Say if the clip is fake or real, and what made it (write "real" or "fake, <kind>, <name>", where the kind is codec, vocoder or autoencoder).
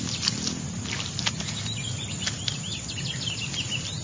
real